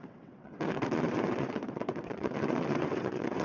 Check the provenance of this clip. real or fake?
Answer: fake